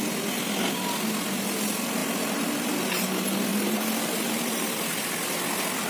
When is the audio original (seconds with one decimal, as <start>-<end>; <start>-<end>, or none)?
0.0-2.0; 3.1-3.5; 4.7-5.9

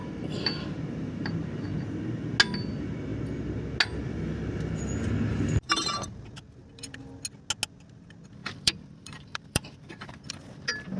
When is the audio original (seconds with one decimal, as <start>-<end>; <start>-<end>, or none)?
1.8-5.3; 7.0-8.4; 10.3-11.0

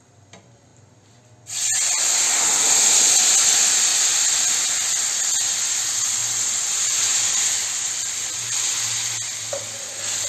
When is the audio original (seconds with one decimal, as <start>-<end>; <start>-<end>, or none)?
0.0-3.9; 4.6-6.2; 8.2-10.3

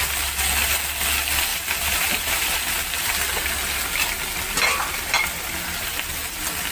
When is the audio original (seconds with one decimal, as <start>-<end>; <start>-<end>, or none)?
0.0-1.5; 2.8-6.7

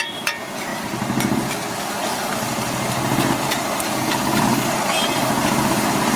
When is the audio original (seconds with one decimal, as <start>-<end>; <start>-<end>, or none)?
0.0-6.2

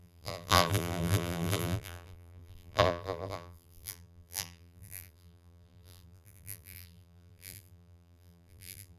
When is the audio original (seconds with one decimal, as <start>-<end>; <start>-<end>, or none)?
none